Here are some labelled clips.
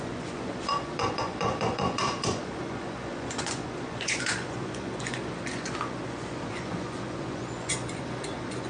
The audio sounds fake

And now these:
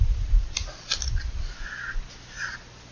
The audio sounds real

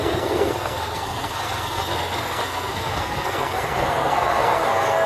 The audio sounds fake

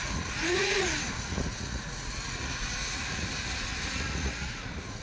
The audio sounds fake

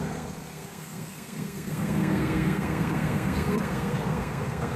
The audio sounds fake